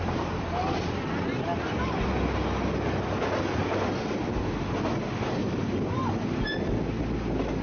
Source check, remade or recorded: recorded